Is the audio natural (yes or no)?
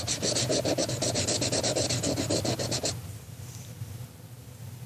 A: yes